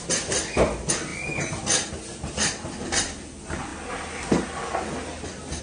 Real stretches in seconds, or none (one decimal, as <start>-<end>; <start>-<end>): 0.0-5.6